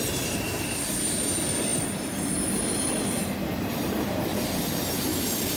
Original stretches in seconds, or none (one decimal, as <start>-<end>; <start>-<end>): 0.0-5.6